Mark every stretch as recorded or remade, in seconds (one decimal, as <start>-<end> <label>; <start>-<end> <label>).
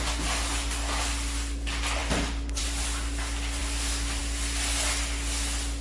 0.0-5.8 recorded